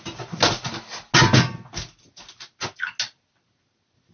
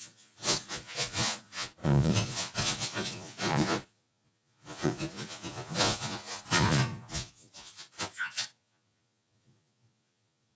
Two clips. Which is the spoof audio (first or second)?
second